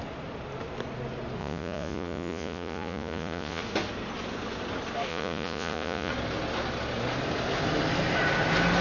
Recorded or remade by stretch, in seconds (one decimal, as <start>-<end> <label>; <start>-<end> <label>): 0.0-1.4 recorded; 1.4-3.6 remade; 3.6-5.1 recorded; 5.1-6.1 remade; 6.1-8.8 recorded